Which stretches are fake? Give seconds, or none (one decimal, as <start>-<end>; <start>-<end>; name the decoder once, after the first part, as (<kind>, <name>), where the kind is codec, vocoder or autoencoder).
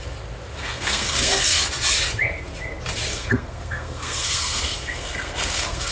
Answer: 0.6-1.6 (codec, SNAC); 3.1-5.9